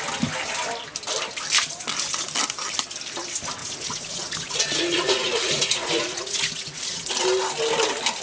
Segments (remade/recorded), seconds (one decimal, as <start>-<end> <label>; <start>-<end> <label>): 0.0-3.6 recorded; 3.6-7.1 remade; 7.1-8.2 recorded